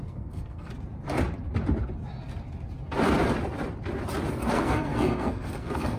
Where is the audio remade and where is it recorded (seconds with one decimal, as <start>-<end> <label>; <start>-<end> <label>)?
0.0-0.7 remade; 0.7-4.3 recorded; 4.3-6.0 remade

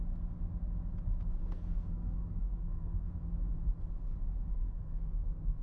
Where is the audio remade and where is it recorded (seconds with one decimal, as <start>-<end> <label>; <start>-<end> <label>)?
0.0-1.4 recorded; 1.4-3.1 remade; 3.1-4.5 recorded; 4.5-5.6 remade

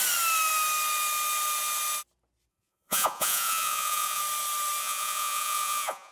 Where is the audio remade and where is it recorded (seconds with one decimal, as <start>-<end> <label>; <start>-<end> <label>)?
0.0-2.5 recorded; 2.5-4.2 remade; 4.2-4.8 recorded; 4.8-6.1 remade

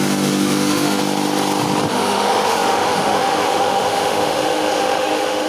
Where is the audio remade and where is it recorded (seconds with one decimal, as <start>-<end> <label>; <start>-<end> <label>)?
0.0-1.0 remade; 1.0-1.9 recorded; 1.9-5.5 remade

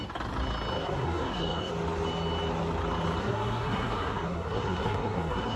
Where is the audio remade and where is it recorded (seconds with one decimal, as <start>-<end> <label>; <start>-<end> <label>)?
0.0-0.8 recorded; 0.8-1.7 remade; 1.7-3.2 recorded; 3.2-5.6 remade

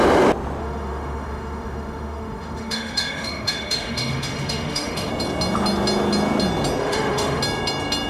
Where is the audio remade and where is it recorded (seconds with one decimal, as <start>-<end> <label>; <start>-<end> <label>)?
0.0-0.6 recorded; 0.6-5.1 remade; 5.1-6.8 recorded; 6.8-7.4 remade; 7.4-8.1 recorded

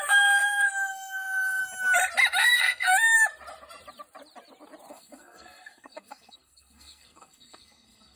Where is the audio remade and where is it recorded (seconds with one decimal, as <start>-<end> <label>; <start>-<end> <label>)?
0.0-1.6 remade; 1.6-2.4 recorded; 2.4-2.9 remade; 2.9-4.9 recorded; 4.9-8.2 remade

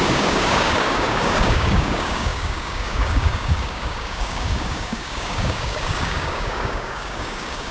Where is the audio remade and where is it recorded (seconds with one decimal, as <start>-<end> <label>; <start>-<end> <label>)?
0.0-7.7 remade